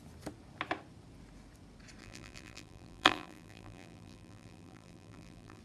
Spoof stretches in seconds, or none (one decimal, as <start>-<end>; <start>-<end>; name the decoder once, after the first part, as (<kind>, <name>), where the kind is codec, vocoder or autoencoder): 2.0-5.6 (vocoder, BigVGAN v2)